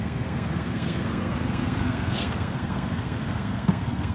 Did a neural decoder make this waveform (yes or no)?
yes